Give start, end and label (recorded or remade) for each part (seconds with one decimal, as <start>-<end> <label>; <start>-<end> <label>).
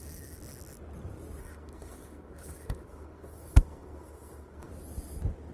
0.0-1.4 recorded; 1.4-4.7 remade; 4.7-5.5 recorded